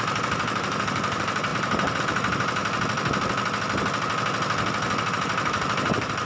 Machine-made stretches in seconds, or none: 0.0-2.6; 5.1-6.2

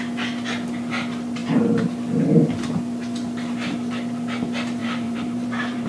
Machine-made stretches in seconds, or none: 4.8-5.9

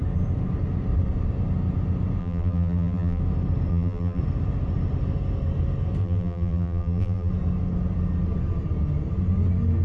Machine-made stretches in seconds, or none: 2.2-3.2; 3.7-4.2; 6.0-7.3

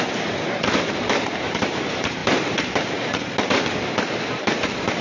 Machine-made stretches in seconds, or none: 0.0-2.2; 3.9-5.0

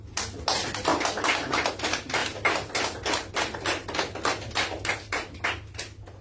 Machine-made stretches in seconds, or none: none

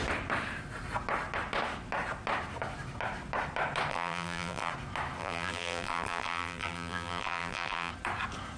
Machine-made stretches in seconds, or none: 3.9-4.7; 5.2-7.9

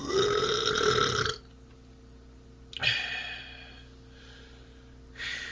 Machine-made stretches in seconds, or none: none